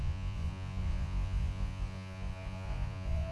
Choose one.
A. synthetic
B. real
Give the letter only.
A